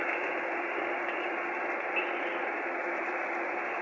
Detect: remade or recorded recorded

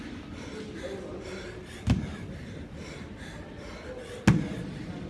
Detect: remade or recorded recorded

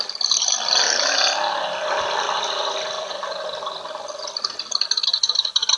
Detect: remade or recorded recorded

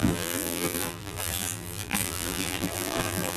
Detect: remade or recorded remade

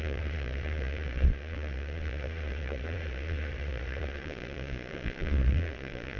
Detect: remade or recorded remade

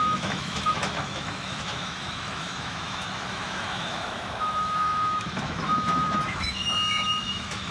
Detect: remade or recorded remade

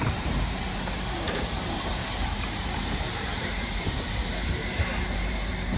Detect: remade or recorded remade